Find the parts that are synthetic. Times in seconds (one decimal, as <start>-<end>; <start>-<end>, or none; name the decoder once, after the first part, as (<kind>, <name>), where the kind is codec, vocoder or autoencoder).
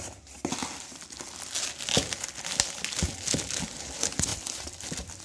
none